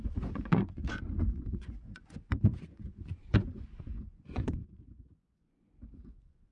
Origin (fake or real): fake